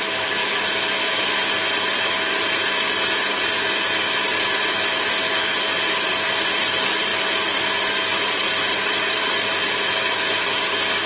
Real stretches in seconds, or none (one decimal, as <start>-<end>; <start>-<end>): 0.0-0.4; 1.2-11.1